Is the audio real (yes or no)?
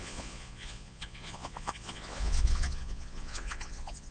no